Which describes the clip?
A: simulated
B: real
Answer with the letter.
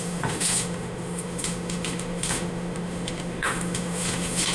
A